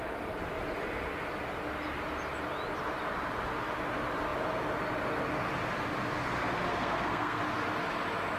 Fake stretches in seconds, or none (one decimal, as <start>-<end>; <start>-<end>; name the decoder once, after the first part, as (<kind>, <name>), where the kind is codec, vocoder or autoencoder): 6.7-7.4 (codec, SNAC)